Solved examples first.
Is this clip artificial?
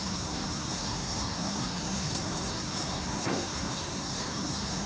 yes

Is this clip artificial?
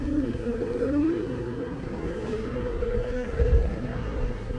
yes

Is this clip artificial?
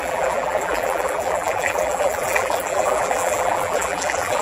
yes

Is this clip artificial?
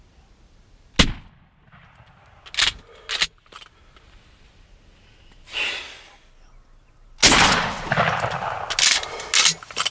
no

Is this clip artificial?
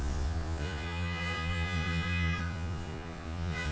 yes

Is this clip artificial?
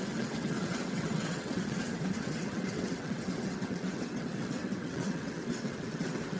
yes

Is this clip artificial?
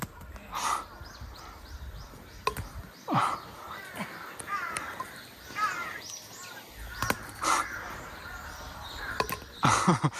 no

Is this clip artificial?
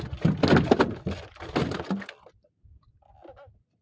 no